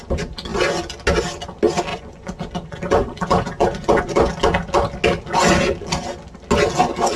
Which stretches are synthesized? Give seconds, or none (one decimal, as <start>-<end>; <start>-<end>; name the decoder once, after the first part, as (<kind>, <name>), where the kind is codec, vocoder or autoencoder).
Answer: 1.9-4.3 (vocoder, Vocos)